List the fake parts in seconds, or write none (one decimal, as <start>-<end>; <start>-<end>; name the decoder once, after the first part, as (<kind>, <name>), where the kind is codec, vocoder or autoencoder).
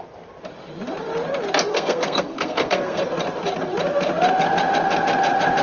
1.7-3.0 (codec, SNAC)